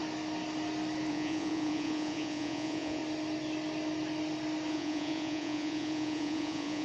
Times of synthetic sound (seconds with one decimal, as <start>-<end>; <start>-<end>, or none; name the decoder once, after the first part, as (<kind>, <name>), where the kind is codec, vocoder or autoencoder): 1.1-3.0 (vocoder, Vocos); 4.7-6.8